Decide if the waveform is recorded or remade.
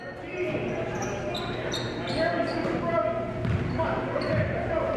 recorded